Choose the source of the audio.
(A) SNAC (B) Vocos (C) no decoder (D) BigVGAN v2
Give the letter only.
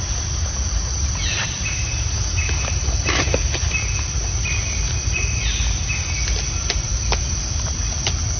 C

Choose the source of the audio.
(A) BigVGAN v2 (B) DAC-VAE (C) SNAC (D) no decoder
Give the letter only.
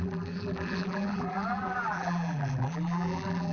A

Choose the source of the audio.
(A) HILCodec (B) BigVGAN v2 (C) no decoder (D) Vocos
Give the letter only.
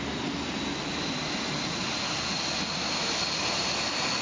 C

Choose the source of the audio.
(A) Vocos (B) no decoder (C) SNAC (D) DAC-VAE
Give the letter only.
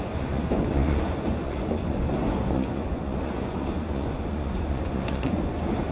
A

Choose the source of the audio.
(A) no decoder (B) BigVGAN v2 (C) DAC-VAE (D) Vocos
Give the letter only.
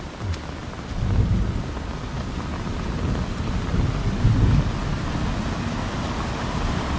A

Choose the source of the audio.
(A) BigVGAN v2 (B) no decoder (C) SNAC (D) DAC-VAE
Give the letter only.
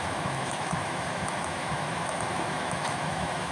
D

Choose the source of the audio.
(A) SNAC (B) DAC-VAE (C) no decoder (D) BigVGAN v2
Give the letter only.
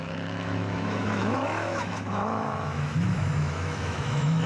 B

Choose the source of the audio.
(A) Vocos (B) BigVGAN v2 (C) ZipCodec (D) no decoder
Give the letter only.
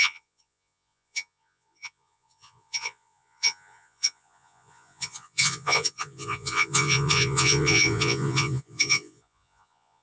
A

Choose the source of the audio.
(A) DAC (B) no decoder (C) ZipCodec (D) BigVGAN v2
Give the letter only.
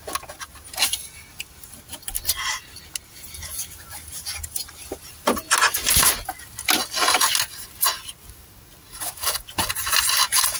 B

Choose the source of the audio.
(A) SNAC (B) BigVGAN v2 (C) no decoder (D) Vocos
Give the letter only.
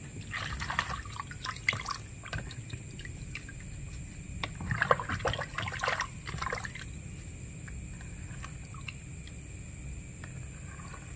C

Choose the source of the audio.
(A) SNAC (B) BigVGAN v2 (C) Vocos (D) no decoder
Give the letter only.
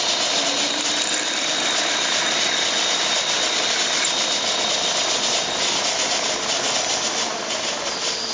D